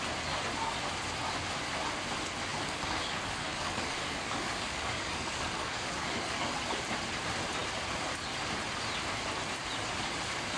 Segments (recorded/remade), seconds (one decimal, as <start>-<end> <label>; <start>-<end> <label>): 0.0-2.5 recorded; 2.5-6.5 remade; 6.5-10.6 recorded